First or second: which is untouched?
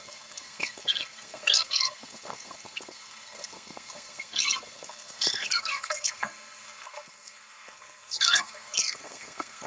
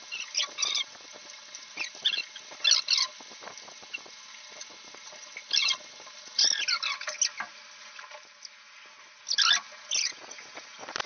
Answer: second